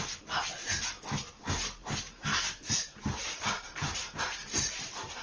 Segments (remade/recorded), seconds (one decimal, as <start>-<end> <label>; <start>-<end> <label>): 0.0-2.3 recorded; 2.3-3.7 remade; 3.7-5.2 recorded